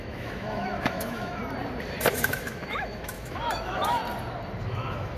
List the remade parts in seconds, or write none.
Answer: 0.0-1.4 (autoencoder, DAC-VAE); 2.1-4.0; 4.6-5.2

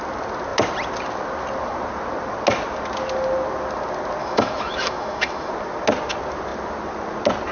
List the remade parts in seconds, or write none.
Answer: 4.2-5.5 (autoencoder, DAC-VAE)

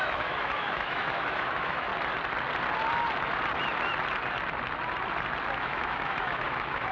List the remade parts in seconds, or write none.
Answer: 0.0-1.9 (autoencoder, DAC-VAE); 5.5-6.9

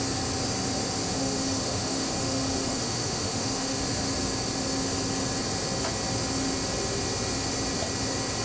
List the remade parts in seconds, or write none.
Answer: 1.1-3.8 (autoencoder, DAC-VAE)